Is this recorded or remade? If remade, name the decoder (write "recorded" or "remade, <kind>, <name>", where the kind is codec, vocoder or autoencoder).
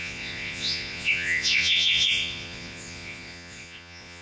remade, vocoder, Vocos